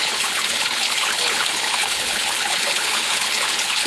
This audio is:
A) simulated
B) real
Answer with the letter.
A